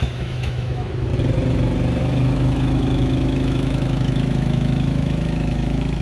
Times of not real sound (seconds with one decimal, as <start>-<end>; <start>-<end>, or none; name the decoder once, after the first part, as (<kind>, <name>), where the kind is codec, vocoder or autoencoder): 0.0-1.1 (autoencoder, DAC-VAE); 2.0-6.0